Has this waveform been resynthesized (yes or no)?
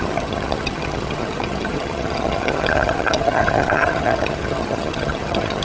yes